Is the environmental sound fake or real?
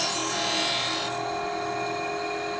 real